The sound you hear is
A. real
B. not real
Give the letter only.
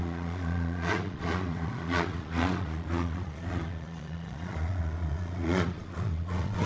B